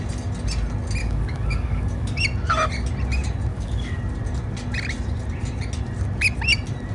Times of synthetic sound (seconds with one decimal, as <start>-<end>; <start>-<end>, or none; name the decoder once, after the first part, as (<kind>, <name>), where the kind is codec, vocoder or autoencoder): 1.0-2.2 (codec, DAC); 3.5-4.0